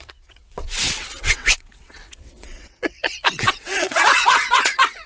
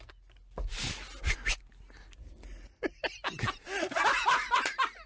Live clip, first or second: second